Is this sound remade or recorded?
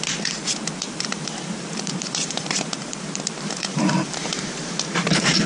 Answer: remade